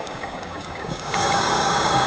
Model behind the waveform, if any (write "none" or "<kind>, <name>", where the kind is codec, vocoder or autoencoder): codec, DAC